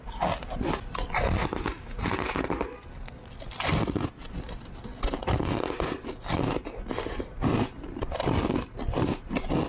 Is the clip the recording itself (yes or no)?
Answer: yes